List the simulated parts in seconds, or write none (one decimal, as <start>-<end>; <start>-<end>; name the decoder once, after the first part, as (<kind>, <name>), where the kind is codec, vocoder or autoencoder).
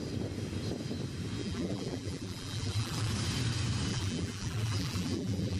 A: 1.4-3.1 (vocoder, BigVGAN v2); 3.9-5.6